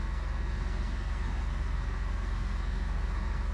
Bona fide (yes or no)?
no